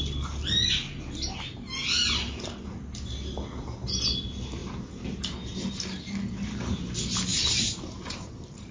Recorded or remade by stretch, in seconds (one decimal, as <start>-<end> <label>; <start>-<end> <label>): 0.0-7.3 recorded; 7.3-8.7 remade